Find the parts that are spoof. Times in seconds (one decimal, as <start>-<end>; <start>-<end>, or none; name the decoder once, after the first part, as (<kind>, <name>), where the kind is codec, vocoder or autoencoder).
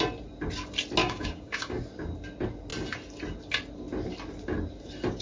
1.0-1.8 (codec, DAC)